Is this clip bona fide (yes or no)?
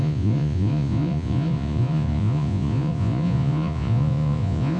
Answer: no